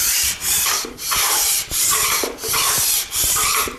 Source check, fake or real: fake